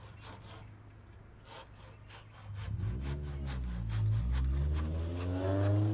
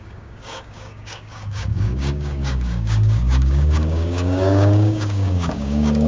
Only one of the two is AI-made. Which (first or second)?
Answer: second